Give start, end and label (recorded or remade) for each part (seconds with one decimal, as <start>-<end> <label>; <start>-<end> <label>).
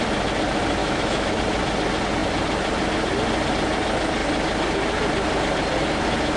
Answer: 0.0-0.8 recorded; 0.8-1.4 remade; 1.4-6.4 recorded